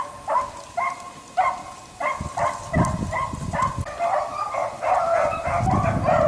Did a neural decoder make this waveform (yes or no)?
no